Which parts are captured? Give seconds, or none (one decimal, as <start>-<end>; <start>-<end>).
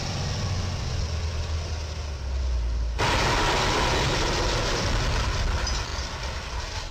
0.0-5.9; 6.5-6.9